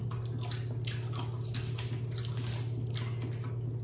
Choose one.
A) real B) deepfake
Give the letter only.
A